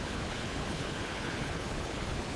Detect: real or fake fake